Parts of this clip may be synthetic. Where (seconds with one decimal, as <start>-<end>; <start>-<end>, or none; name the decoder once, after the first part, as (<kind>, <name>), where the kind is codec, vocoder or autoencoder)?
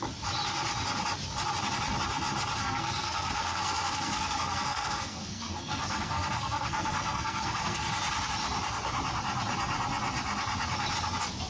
2.6-7.9 (codec, SNAC)